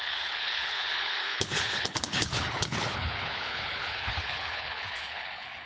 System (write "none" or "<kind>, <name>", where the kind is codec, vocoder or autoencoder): codec, HILCodec